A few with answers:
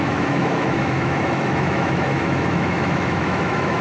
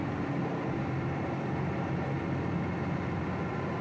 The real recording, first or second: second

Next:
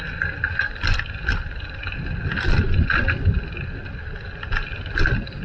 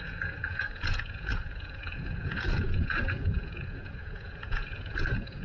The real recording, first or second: first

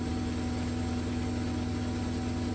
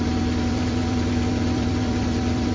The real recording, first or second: first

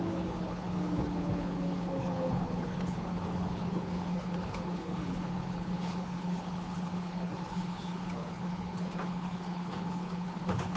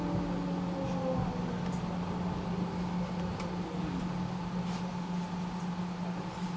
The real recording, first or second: second